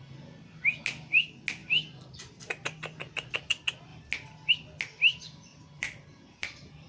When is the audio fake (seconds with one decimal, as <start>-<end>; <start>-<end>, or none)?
5.5-6.9